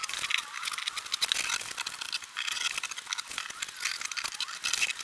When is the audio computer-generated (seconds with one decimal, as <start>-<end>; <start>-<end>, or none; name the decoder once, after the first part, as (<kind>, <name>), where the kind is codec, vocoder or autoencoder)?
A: none